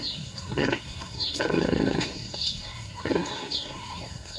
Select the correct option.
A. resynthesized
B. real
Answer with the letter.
A